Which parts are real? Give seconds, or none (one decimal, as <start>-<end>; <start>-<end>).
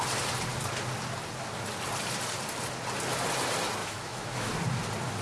0.0-3.8; 4.5-5.2